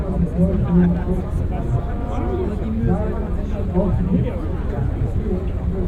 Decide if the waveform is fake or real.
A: real